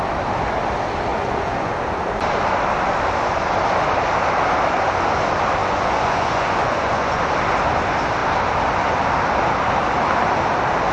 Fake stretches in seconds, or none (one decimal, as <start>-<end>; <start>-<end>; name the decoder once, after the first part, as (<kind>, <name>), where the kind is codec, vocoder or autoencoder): 1.1-1.7 (vocoder, Vocos); 5.6-7.2